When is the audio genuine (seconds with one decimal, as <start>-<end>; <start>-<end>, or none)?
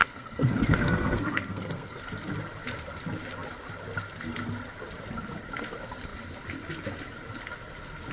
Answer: 2.0-8.1